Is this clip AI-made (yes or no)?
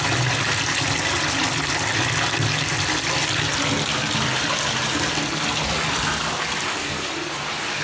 no